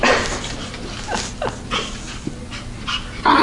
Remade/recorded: recorded